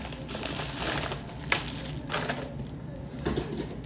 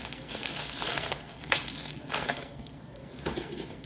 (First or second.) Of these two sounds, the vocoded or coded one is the second